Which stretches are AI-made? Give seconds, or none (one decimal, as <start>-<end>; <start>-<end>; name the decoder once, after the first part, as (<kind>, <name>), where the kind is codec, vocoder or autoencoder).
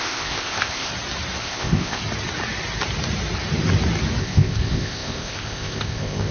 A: 0.0-0.9 (codec, ZipCodec); 1.4-2.0; 4.2-6.3